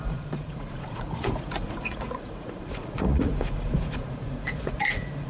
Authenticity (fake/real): fake